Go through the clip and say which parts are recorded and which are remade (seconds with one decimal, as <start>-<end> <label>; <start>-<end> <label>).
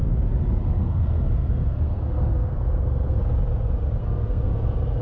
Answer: 0.0-0.8 recorded; 0.8-3.2 remade; 3.2-4.0 recorded; 4.0-4.5 remade; 4.5-5.0 recorded